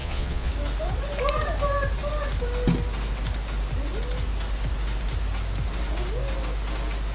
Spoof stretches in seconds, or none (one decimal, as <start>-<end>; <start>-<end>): 0.0-0.5